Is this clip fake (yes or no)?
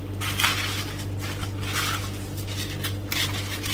no